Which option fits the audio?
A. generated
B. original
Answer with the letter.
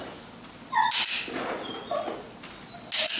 B